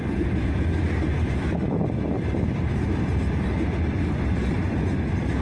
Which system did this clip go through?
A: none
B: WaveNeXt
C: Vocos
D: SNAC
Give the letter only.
A